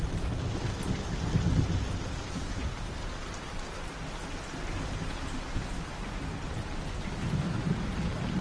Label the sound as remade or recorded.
recorded